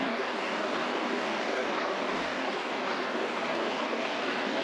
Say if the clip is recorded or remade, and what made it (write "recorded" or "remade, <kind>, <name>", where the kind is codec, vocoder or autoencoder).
remade, codec, DAC